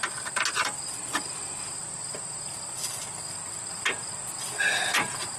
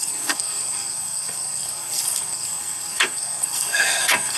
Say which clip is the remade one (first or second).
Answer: second